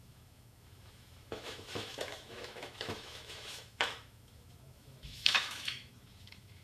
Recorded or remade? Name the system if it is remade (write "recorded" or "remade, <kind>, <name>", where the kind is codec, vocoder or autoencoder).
remade, autoencoder, DAC-VAE